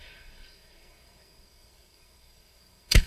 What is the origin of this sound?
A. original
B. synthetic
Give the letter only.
B